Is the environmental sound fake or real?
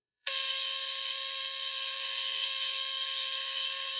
fake